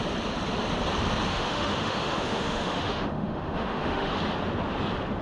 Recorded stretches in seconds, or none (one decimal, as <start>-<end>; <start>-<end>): 0.0-1.3; 4.1-5.2